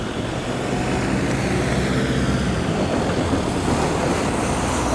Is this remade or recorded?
recorded